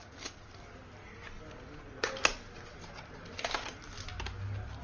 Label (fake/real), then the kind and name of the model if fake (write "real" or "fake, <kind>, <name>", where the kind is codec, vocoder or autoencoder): real